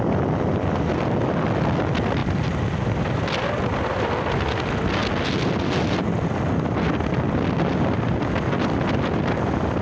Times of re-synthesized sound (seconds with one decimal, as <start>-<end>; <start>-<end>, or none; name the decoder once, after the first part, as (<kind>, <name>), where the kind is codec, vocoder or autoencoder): none